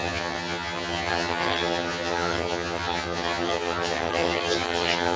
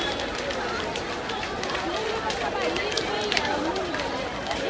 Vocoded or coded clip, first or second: first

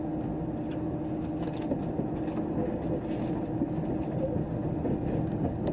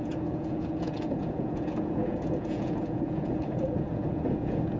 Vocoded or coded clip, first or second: second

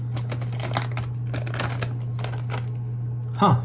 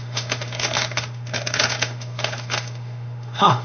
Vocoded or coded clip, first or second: second